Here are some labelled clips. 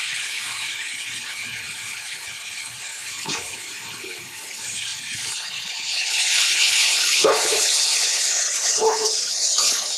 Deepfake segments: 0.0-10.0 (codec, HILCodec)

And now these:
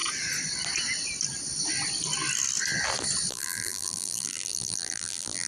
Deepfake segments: 3.3-5.5 (vocoder, BigVGAN v2)

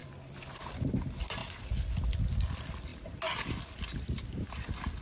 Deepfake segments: 0.0-0.7 (vocoder, BigVGAN v2); 1.4-2.0

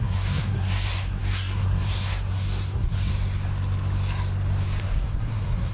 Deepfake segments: 0.0-3.1 (codec, SNAC); 4.8-5.7

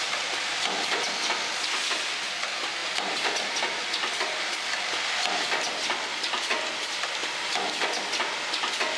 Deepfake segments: 2.8-3.8 (vocoder, BigVGAN v2)

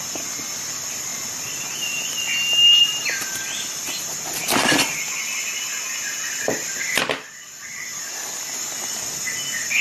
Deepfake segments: 1.1-1.6 (vocoder, BigVGAN v2)